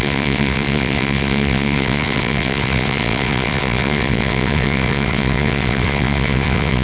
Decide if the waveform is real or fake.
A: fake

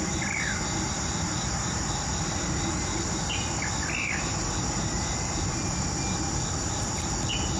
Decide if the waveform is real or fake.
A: real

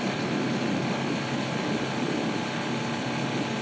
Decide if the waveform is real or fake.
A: real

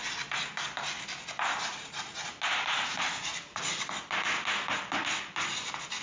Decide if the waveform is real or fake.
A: real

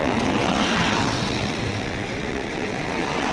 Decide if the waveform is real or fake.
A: fake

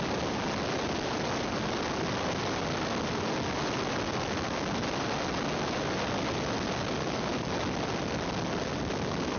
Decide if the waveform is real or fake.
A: real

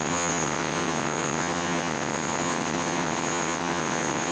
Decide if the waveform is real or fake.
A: fake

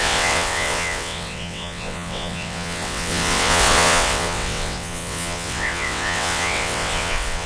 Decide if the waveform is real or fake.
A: fake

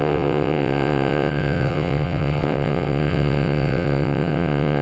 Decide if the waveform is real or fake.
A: fake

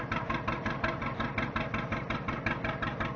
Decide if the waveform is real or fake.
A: real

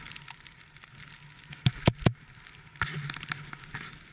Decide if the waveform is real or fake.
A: real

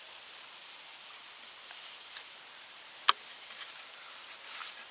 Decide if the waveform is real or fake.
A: real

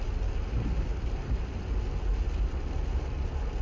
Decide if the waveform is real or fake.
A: real